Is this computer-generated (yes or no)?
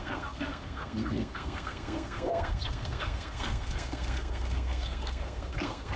yes